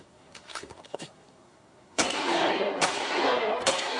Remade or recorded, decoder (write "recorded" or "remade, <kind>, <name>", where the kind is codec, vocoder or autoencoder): remade, codec, SNAC